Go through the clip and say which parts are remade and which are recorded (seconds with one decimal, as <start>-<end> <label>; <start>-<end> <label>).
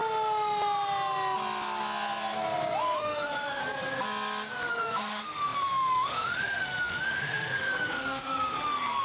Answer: 0.0-2.8 recorded; 2.8-3.6 remade; 3.6-4.7 recorded; 4.7-9.0 remade